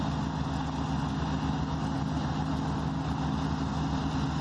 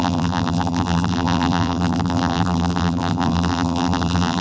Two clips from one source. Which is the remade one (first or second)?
second